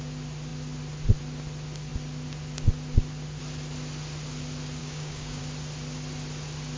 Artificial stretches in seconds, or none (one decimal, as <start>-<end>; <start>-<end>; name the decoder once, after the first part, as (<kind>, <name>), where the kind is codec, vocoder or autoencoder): 4.8-5.4 (codec, DAC)